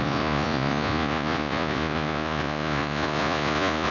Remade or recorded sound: remade